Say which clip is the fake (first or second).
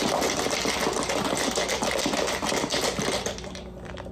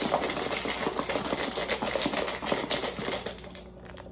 first